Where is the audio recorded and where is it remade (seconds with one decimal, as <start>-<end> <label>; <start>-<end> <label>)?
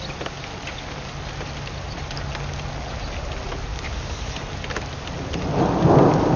0.0-0.5 recorded; 0.5-1.1 remade; 1.1-3.7 recorded; 3.7-4.3 remade; 4.3-6.4 recorded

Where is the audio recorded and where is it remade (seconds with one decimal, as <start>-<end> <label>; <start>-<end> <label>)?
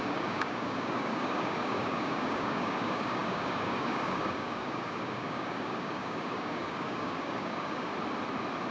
0.0-7.9 remade; 7.9-8.7 recorded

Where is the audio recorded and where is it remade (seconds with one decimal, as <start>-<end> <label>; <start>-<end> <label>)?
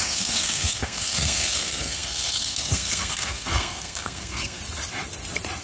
0.0-4.6 remade; 4.6-5.6 recorded